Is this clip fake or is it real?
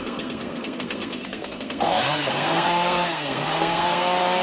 fake